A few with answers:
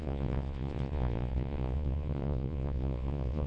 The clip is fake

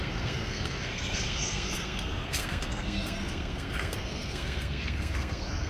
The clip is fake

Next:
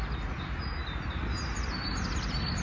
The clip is real